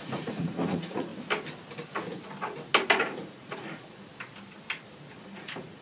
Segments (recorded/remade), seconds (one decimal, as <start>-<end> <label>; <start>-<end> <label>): 0.0-1.1 remade; 1.1-3.0 recorded; 3.0-4.1 remade; 4.1-5.1 recorded; 5.1-5.8 remade